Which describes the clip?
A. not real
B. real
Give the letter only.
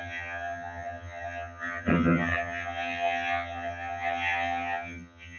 A